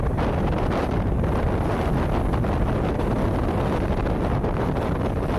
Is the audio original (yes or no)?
yes